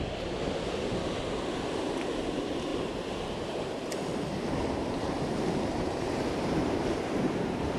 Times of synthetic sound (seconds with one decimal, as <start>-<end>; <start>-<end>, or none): 2.7-7.8